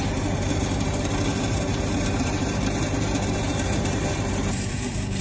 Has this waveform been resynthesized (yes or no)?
yes